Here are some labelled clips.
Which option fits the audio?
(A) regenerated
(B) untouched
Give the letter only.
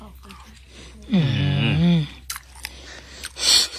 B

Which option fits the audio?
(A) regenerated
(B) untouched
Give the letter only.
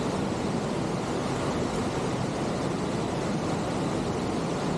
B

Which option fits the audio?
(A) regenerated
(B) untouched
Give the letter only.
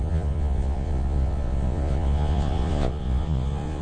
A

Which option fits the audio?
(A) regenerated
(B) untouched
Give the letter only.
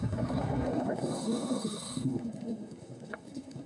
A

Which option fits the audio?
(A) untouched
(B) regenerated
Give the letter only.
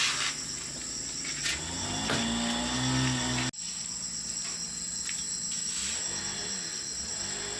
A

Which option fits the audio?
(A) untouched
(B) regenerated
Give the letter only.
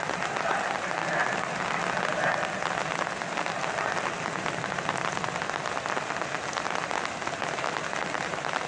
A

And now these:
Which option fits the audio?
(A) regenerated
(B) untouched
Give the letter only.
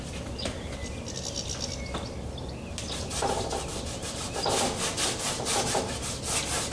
B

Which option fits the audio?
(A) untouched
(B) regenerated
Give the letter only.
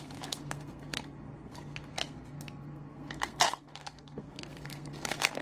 B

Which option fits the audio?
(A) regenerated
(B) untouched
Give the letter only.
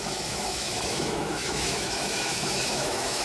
A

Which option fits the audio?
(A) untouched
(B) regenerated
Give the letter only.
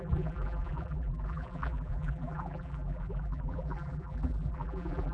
B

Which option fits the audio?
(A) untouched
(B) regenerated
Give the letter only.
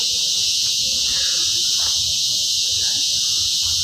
B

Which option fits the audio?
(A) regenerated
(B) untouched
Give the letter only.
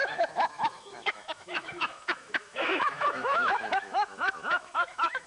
A